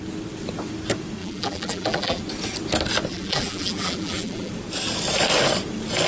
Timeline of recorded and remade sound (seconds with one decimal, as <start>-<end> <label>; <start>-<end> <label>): 0.0-1.2 recorded; 1.2-2.2 remade; 2.2-3.1 recorded; 3.1-4.5 remade; 4.5-6.1 recorded